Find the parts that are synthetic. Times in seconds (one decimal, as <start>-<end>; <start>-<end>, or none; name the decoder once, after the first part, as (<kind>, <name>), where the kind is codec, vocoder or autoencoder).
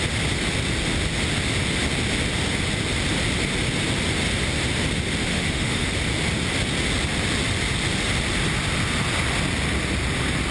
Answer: 5.3-5.9 (autoencoder, DAC-VAE)